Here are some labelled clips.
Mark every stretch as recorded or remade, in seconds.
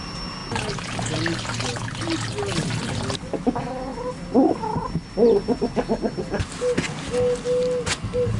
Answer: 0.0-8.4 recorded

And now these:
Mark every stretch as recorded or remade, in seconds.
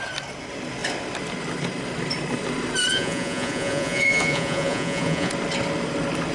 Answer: 0.0-2.9 recorded; 2.9-5.3 remade; 5.3-6.3 recorded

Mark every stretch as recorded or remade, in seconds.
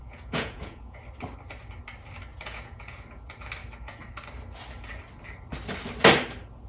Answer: 0.0-1.0 remade; 1.0-2.3 recorded; 2.3-3.0 remade; 3.0-6.7 recorded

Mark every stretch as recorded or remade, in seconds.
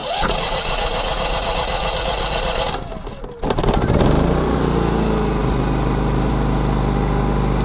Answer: 0.0-2.6 remade; 2.6-7.6 recorded